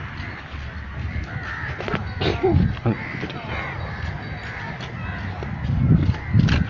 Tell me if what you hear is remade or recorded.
recorded